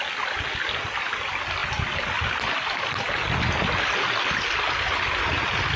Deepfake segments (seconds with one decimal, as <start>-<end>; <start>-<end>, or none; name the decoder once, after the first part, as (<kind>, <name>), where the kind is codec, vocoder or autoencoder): none